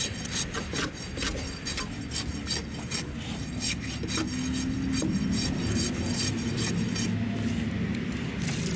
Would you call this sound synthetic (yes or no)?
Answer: no